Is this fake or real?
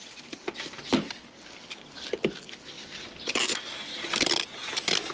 real